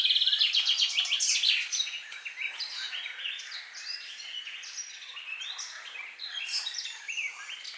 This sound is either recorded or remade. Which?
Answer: recorded